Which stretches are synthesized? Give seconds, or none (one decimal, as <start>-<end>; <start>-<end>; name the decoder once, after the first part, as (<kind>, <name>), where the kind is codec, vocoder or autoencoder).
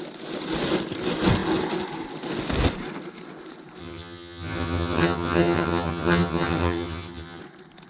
3.8-7.4 (vocoder, HiFi-GAN)